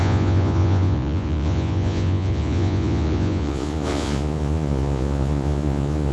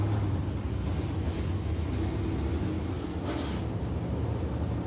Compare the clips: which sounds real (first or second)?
second